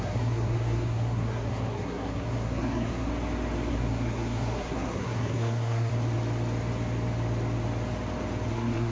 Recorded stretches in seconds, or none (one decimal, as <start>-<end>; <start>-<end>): 3.1-3.7; 5.9-8.5